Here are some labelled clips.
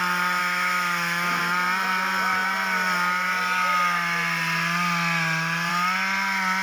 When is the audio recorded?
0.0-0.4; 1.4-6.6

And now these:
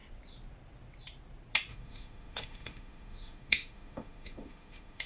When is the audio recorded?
0.0-1.7